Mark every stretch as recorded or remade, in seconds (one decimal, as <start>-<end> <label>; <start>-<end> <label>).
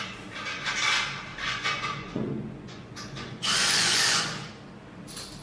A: 0.0-1.3 recorded; 1.3-4.5 remade; 4.5-5.4 recorded